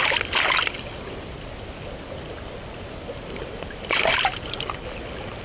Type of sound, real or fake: real